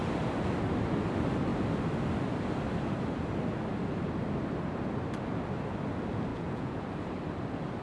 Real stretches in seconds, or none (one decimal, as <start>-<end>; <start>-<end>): 0.0-6.3; 6.9-7.8